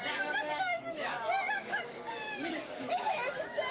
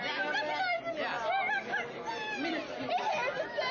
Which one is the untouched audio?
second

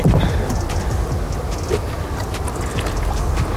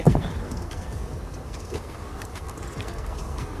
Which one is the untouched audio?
first